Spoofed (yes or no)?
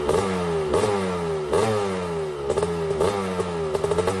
no